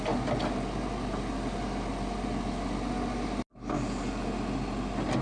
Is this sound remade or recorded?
recorded